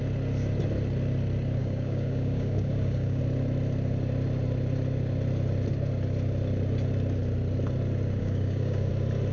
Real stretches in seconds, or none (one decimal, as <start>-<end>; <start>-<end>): 0.0-1.6; 3.2-8.2; 8.9-9.3